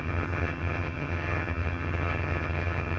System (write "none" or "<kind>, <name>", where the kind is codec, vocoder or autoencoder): vocoder, HiFi-GAN